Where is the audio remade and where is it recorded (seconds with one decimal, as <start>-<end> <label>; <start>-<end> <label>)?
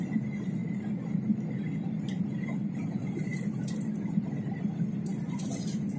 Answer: 0.0-6.0 recorded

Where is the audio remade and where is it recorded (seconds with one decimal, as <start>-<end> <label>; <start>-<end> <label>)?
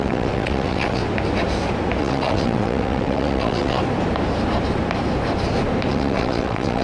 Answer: 0.0-1.0 remade; 1.0-2.0 recorded; 2.0-3.8 remade; 3.8-5.9 recorded; 5.9-6.8 remade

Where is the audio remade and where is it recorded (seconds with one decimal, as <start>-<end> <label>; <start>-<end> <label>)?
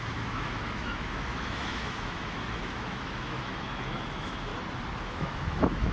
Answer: 0.0-4.5 remade; 4.5-5.0 recorded; 5.0-5.9 remade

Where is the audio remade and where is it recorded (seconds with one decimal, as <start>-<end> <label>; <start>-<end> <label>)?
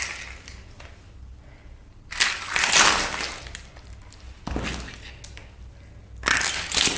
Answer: 0.0-7.0 recorded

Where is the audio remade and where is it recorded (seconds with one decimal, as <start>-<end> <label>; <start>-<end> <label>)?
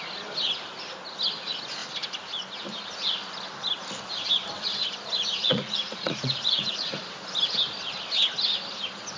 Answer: 0.0-5.4 recorded; 5.4-7.0 remade; 7.0-9.2 recorded